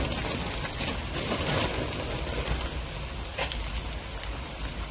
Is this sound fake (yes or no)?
no